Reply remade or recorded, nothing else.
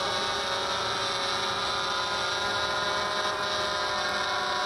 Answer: recorded